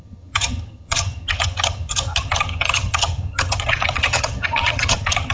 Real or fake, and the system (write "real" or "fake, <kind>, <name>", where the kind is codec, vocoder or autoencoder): fake, vocoder, HiFi-GAN